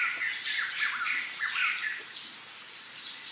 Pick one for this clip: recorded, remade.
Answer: recorded